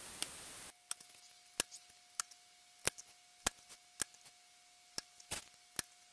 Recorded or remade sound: recorded